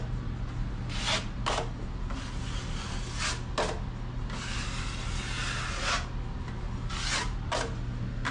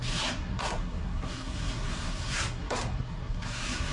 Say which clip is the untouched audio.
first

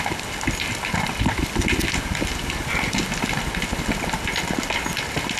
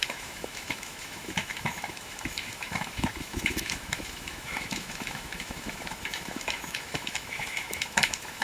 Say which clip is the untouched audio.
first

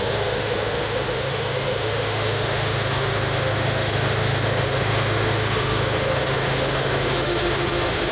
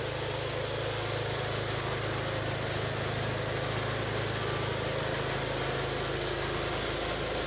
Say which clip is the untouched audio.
second